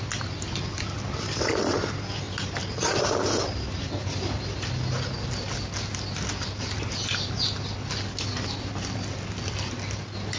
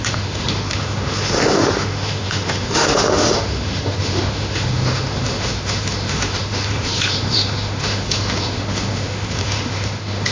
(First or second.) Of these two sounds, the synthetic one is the second